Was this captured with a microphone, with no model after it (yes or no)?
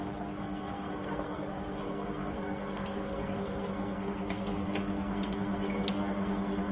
no